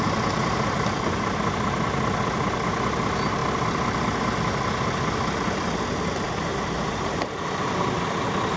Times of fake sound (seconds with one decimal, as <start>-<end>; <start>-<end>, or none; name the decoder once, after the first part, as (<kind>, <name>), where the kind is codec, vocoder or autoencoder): 3.4-8.0 (vocoder, BigVGAN v2)